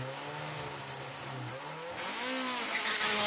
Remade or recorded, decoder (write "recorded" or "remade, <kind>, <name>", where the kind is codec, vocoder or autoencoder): recorded